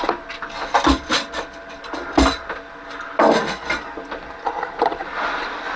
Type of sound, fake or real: real